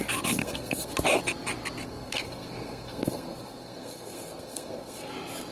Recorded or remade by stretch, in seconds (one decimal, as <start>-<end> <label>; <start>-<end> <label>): 0.0-0.4 recorded; 0.4-0.9 remade; 0.9-1.8 recorded; 1.8-5.1 remade; 5.1-5.5 recorded